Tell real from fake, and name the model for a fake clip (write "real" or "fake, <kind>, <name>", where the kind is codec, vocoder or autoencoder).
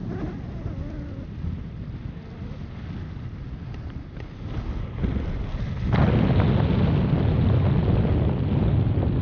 real